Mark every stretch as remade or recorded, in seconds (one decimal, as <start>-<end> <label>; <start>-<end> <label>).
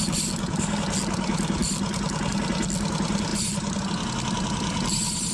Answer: 0.0-3.3 recorded; 3.3-3.8 remade; 3.8-5.3 recorded